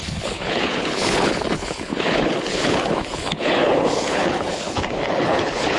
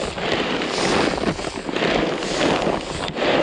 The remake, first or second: first